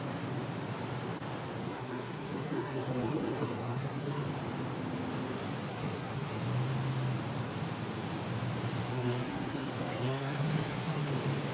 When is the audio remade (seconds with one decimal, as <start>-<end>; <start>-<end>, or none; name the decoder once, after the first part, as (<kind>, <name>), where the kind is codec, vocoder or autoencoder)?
1.6-4.2 (codec, SNAC); 5.7-6.4; 8.8-11.1